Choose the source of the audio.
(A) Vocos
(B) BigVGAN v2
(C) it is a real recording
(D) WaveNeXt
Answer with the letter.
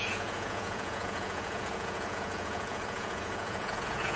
A